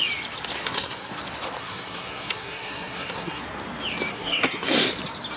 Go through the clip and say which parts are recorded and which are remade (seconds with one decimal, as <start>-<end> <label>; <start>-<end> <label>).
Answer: 0.0-0.6 recorded; 0.6-1.1 remade; 1.1-1.6 recorded; 1.6-3.4 remade; 3.4-4.1 recorded; 4.1-4.9 remade; 4.9-5.4 recorded